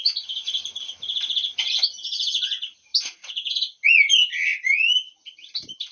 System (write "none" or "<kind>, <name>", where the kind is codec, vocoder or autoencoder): none